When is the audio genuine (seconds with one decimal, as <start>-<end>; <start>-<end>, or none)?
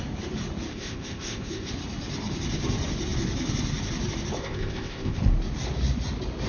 0.0-0.7; 1.7-4.4; 5.2-6.5